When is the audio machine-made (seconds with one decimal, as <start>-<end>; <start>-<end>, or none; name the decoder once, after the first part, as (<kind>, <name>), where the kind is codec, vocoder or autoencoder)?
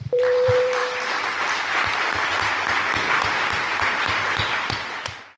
0.0-0.8 (vocoder, BigVGAN v2); 4.0-5.4